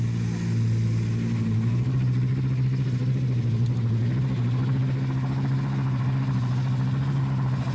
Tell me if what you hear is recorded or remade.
recorded